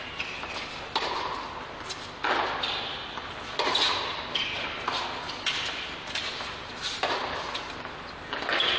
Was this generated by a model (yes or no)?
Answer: no